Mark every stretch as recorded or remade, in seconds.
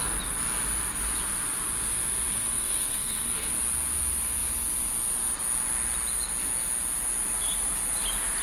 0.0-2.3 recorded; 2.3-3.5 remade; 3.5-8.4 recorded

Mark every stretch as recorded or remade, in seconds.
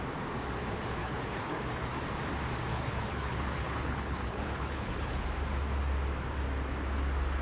0.0-1.0 recorded; 1.0-2.0 remade; 2.0-2.7 recorded; 2.7-5.2 remade; 5.2-7.4 recorded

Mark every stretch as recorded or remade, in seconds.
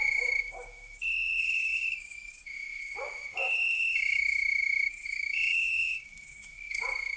0.0-7.2 remade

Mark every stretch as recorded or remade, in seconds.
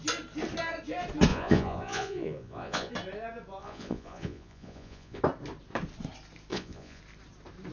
0.0-1.3 recorded; 1.3-2.9 remade; 2.9-3.6 recorded; 3.6-5.2 remade; 5.2-6.5 recorded; 6.5-7.0 remade; 7.0-7.7 recorded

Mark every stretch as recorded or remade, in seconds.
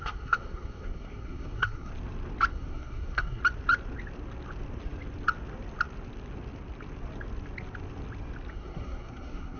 0.0-1.9 remade; 1.9-2.5 recorded; 2.5-3.4 remade; 3.4-8.5 recorded; 8.5-9.6 remade